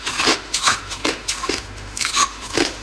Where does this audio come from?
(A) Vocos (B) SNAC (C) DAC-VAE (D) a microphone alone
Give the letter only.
C